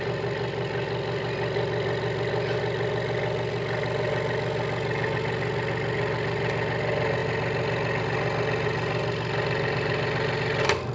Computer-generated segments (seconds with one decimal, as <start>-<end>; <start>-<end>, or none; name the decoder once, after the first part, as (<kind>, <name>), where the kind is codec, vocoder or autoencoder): none